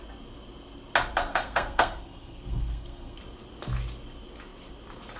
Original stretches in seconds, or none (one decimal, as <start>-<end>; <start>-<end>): 0.0-1.3; 3.2-5.2